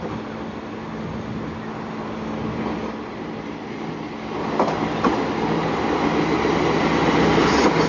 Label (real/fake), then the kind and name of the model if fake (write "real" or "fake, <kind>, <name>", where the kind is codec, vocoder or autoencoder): real